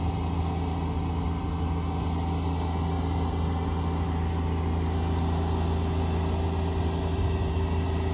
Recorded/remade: recorded